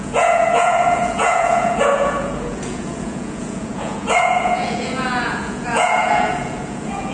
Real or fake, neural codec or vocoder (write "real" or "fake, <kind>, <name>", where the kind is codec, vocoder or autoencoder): fake, vocoder, Vocos